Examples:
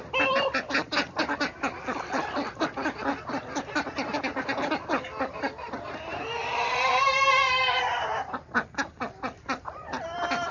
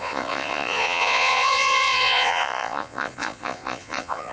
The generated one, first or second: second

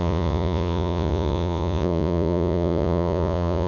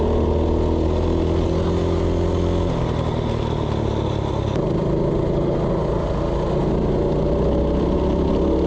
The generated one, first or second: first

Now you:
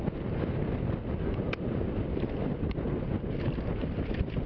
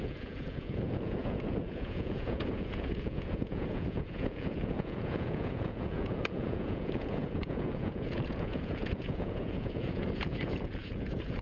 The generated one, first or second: second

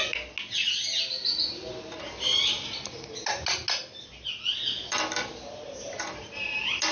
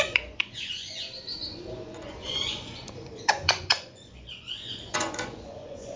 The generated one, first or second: second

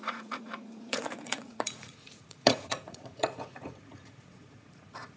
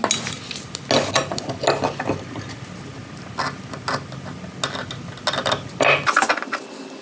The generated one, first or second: first